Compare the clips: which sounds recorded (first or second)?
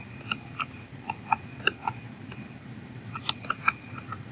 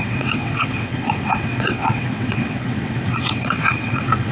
first